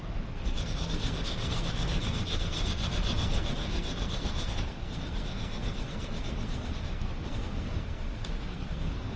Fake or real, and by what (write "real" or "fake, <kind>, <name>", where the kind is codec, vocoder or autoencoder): fake, codec, SNAC